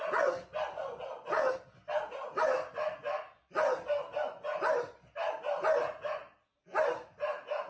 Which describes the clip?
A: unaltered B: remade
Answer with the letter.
A